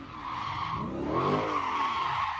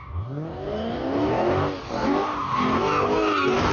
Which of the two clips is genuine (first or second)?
first